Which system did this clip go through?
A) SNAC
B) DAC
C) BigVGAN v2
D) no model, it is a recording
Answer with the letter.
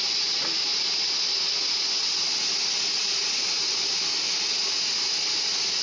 D